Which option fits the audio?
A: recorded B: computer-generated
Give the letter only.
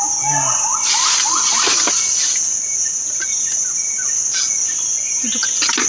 A